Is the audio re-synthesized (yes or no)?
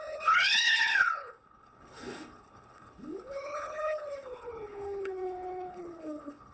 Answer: yes